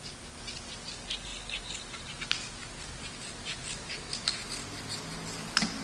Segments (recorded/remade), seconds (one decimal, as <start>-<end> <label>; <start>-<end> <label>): 0.0-5.8 recorded